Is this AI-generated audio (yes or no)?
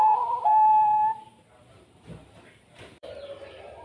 yes